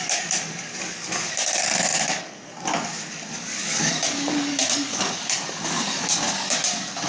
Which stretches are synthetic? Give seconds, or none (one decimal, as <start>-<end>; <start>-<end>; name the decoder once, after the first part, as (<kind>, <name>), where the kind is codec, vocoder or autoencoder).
0.0-7.1 (codec, DAC)